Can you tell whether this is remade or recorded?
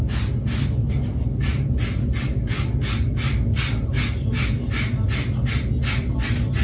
recorded